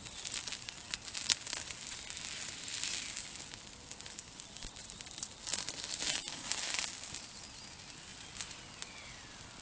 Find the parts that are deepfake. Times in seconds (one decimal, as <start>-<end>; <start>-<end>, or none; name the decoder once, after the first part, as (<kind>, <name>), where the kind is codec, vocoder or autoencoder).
none